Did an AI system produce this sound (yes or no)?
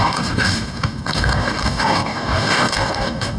yes